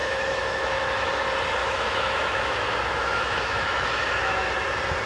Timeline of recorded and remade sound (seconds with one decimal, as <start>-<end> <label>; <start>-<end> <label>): 0.0-1.1 remade; 1.1-1.6 recorded; 1.6-4.5 remade; 4.5-5.1 recorded